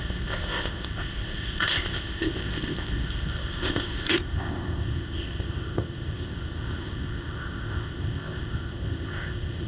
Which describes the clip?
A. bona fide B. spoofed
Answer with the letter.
B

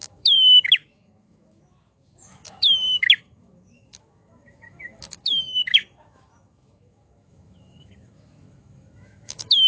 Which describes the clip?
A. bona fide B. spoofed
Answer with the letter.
B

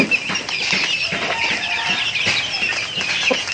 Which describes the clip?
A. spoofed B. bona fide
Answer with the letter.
B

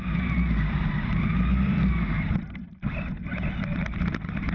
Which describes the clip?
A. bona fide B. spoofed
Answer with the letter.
A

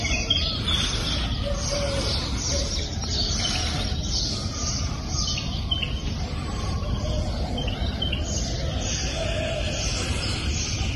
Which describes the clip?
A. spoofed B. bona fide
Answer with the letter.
B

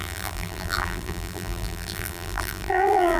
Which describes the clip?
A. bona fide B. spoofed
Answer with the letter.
B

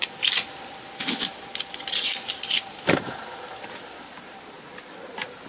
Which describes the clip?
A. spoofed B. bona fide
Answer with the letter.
B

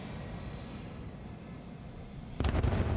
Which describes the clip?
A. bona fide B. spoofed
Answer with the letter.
A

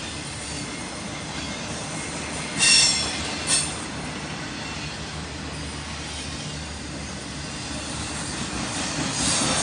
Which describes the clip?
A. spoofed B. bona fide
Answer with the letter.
B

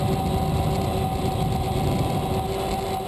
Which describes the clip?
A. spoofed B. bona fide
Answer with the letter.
B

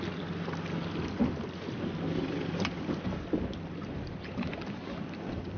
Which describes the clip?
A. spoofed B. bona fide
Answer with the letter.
B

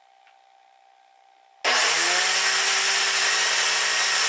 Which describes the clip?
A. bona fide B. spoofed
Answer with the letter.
A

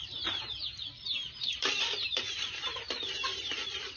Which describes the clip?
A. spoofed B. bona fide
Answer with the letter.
A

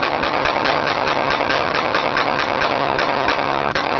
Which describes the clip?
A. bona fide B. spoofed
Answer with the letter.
B